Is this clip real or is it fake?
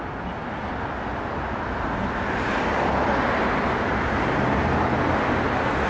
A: real